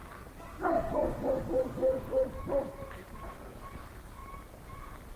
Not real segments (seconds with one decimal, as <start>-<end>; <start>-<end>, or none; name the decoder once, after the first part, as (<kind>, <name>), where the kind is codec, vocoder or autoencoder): none